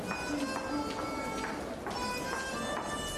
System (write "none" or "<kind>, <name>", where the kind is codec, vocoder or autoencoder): none